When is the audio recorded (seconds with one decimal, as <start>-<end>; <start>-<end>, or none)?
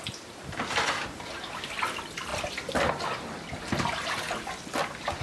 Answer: 0.0-2.3; 2.9-5.2